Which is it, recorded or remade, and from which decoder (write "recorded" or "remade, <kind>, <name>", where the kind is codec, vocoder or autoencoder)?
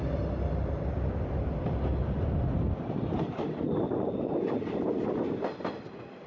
recorded